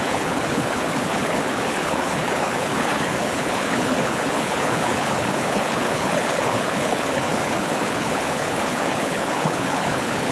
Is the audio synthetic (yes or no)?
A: yes